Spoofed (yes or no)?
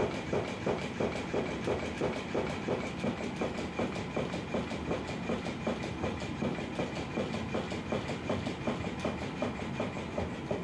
no